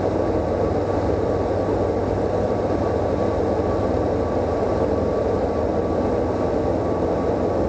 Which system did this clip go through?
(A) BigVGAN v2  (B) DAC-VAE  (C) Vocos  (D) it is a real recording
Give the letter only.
D